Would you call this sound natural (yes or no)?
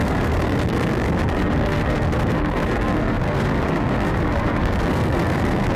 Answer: no